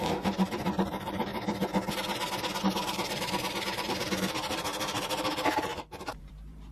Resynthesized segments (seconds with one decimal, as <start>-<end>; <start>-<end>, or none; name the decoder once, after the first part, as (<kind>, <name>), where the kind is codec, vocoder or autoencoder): 0.0-1.3 (vocoder, BigVGAN v2); 2.6-6.7